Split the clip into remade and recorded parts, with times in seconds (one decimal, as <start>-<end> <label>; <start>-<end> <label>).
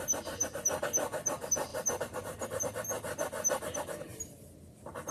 0.0-1.7 recorded; 1.7-2.6 remade; 2.6-5.1 recorded